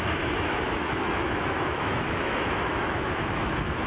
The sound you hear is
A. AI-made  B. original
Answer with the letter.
A